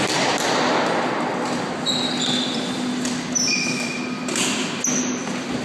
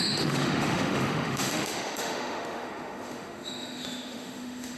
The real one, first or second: first